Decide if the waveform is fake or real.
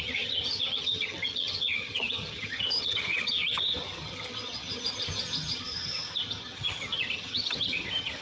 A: fake